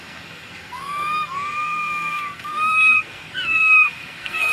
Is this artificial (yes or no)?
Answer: yes